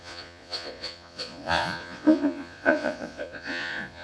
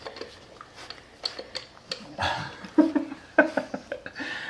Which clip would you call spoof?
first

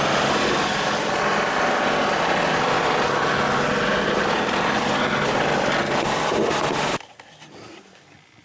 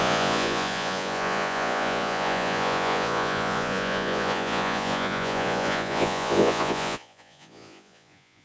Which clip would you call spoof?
second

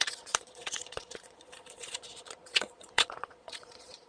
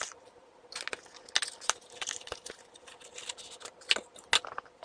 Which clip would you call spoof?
first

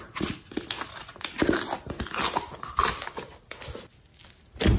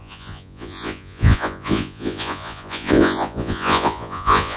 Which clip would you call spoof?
second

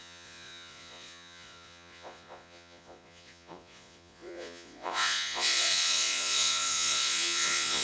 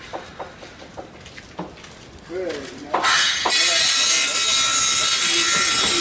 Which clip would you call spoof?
first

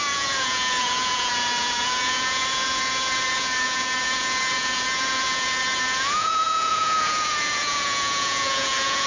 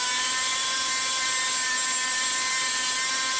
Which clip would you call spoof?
first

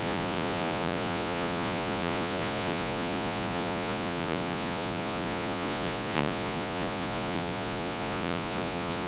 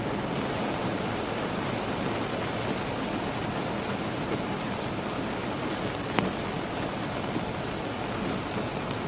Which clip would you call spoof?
first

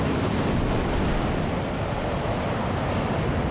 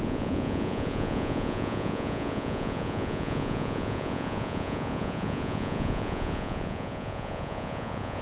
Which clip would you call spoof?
second